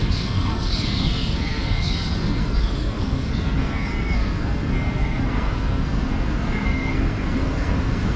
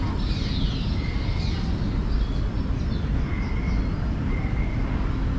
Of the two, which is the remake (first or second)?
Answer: first